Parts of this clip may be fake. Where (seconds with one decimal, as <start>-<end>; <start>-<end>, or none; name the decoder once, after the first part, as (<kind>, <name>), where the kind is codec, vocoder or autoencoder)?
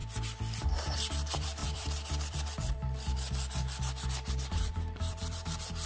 0.6-5.9 (vocoder, BigVGAN v2)